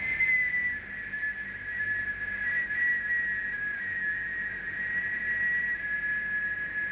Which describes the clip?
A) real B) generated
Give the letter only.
A